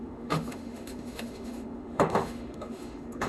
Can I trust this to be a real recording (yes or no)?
no